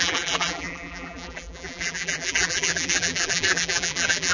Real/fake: fake